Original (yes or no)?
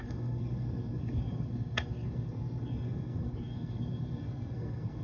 no